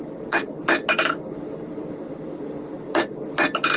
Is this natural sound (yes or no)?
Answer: no